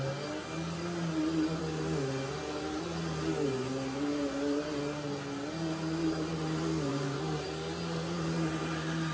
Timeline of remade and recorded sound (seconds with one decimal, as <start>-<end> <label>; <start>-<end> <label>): 0.0-6.9 recorded; 6.9-7.5 remade; 7.5-9.1 recorded